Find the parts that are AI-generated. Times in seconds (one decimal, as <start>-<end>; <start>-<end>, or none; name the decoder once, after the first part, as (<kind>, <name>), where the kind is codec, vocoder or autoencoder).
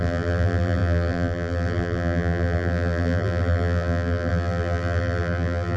0.0-5.8 (vocoder, BigVGAN v2)